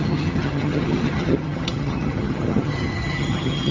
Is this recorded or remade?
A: remade